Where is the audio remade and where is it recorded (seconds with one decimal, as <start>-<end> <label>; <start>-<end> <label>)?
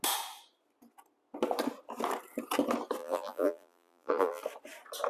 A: 0.0-3.0 recorded; 3.0-4.4 remade; 4.4-5.1 recorded